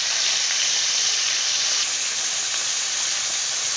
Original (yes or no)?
yes